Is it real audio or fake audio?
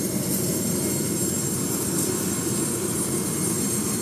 real